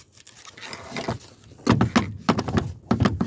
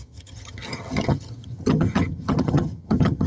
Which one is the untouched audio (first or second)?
first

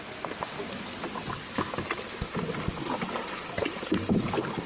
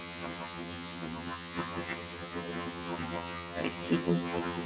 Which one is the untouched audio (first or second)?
first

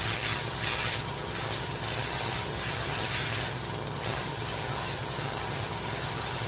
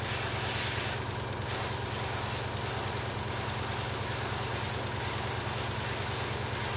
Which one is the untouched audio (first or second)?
second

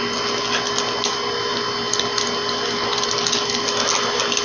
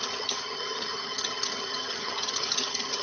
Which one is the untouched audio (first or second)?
first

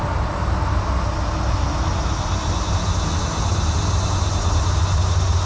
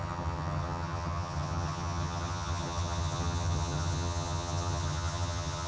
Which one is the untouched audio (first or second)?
first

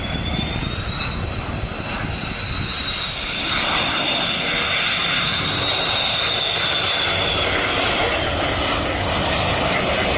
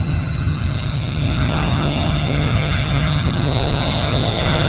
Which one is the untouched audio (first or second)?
first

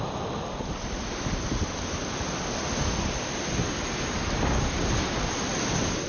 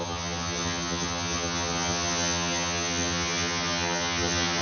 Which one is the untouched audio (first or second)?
first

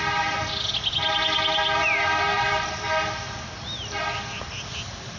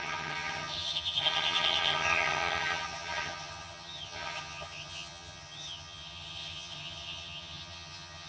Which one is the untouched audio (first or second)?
first